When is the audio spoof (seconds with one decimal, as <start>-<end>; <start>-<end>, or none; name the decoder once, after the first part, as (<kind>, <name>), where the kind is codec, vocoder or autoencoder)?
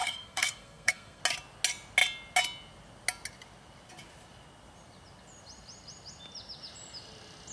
0.0-1.2 (codec, SNAC)